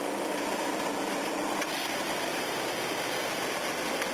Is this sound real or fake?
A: real